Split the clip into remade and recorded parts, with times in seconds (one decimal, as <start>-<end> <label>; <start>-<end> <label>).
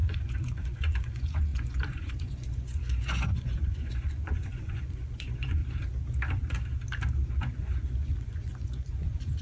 0.0-5.6 remade; 5.6-7.3 recorded; 7.3-9.4 remade